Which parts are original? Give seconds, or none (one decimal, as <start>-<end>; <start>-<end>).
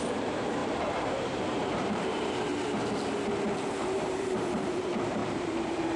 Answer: 2.5-3.8